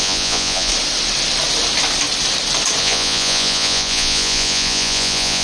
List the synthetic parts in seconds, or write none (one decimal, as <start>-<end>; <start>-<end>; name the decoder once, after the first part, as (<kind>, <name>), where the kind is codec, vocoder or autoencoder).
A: 0.0-0.7 (vocoder, Vocos); 2.8-5.4